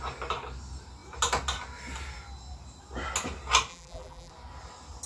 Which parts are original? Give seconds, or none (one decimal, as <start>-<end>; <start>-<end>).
0.0-3.7; 4.3-5.1